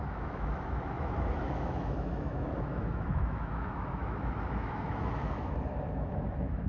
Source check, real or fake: fake